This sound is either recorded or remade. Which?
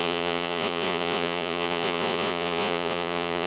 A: remade